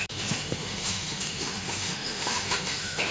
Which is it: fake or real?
fake